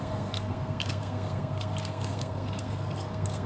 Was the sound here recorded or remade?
remade